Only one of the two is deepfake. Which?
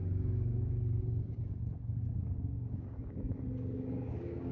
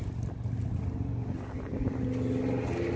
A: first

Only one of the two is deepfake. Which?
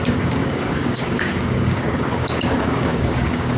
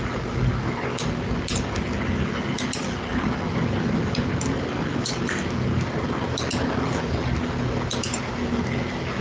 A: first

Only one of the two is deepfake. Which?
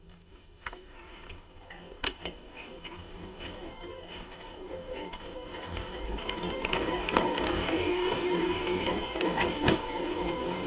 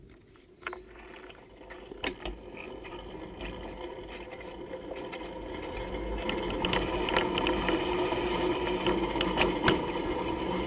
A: first